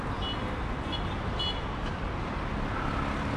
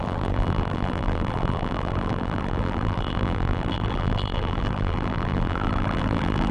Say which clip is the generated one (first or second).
second